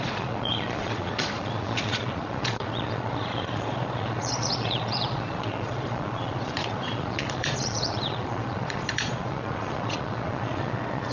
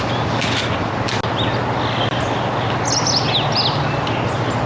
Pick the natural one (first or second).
second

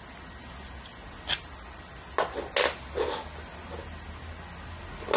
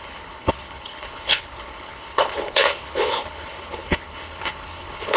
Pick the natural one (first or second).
first